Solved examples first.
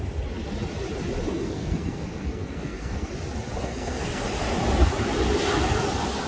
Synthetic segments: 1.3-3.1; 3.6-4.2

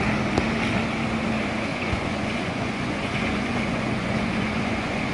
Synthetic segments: 1.7-5.1